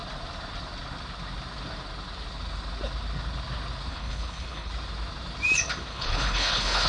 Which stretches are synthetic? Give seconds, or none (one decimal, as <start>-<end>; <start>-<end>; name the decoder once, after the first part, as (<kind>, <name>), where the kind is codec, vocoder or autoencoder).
3.9-4.7 (codec, HILCodec); 5.9-6.9